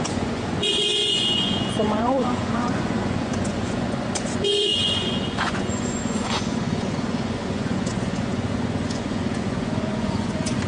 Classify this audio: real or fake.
fake